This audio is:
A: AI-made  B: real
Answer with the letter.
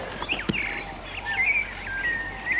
B